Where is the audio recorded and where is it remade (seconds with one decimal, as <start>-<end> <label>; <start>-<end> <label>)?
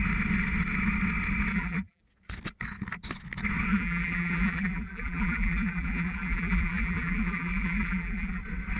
0.0-1.5 recorded; 1.5-2.0 remade; 2.0-3.7 recorded; 3.7-8.4 remade; 8.4-8.8 recorded